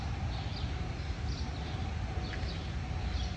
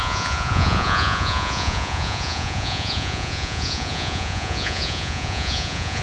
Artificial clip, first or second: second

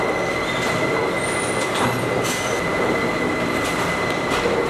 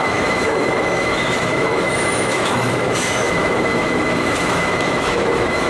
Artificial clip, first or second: second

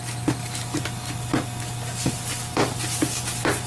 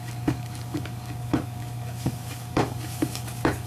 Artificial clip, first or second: second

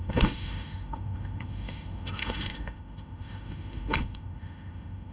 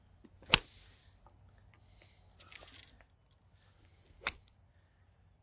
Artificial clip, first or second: first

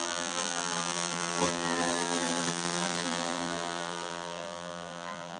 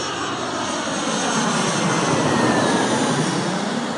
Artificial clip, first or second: first